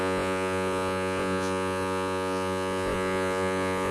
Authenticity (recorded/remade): remade